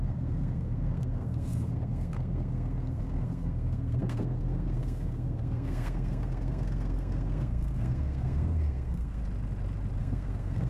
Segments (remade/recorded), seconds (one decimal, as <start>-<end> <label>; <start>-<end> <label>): 0.0-9.2 remade; 9.2-10.0 recorded; 10.0-10.7 remade